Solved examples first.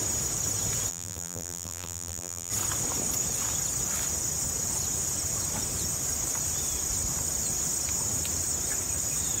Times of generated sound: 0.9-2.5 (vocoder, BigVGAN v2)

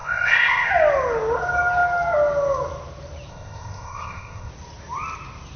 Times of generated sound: 0.0-0.7 (codec, ZipCodec); 3.3-4.5

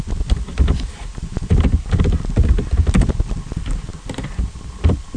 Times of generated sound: 0.5-1.5 (vocoder, BigVGAN v2)

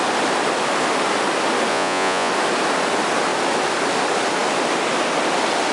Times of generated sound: 1.7-2.3 (vocoder, Vocos)

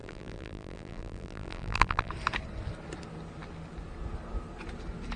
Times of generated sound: 0.0-2.1 (vocoder, BigVGAN v2)

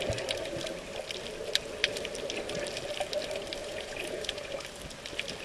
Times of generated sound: 3.6-4.5 (vocoder, Vocos)